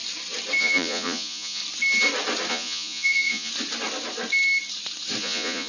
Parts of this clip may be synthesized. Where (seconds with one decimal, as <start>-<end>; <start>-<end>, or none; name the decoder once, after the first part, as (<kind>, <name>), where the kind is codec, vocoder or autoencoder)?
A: 0.6-1.6 (vocoder, Vocos); 2.5-3.5; 5.2-5.7